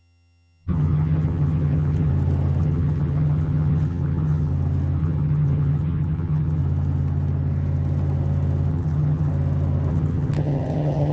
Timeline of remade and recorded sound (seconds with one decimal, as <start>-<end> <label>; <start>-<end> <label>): 0.0-2.1 remade; 2.1-2.6 recorded; 2.6-4.5 remade; 4.5-5.0 recorded; 5.0-6.6 remade; 6.6-8.7 recorded; 8.7-9.3 remade; 9.3-9.9 recorded; 9.9-11.1 remade